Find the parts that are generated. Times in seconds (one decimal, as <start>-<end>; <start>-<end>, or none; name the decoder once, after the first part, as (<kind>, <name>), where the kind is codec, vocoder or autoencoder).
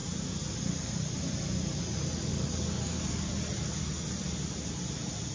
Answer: 2.3-3.3 (codec, DAC)